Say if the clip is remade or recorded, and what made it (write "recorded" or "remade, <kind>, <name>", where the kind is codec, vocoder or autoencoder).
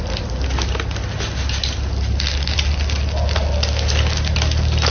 recorded